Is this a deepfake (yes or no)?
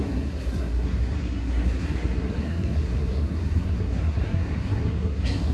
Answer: yes